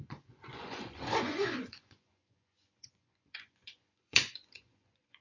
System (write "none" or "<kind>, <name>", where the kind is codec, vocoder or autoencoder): vocoder, Vocos